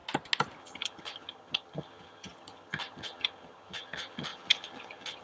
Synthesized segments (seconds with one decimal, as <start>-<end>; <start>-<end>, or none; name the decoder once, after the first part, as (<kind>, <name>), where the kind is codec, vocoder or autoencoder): 0.6-5.2 (vocoder, HiFi-GAN)